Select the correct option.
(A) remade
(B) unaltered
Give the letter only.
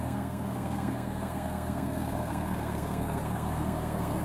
A